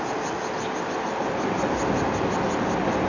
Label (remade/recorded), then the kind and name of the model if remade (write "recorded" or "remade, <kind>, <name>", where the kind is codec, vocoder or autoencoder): recorded